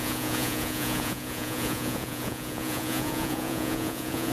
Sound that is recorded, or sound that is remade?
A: remade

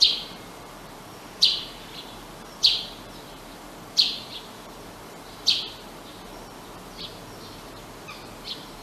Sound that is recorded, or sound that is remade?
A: remade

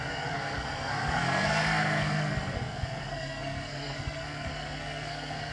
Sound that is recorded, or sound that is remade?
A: remade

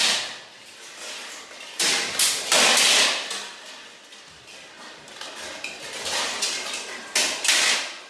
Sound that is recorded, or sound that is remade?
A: recorded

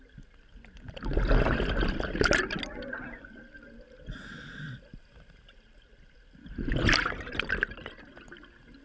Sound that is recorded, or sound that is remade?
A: recorded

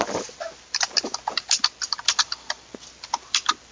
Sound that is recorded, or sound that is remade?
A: recorded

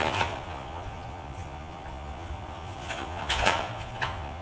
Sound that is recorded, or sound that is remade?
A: remade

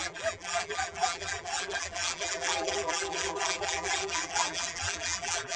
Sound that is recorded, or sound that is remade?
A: remade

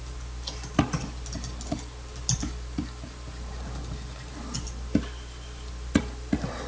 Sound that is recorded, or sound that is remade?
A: recorded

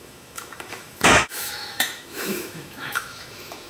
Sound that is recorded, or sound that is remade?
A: remade